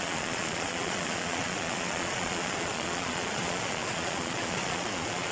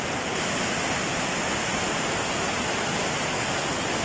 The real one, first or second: second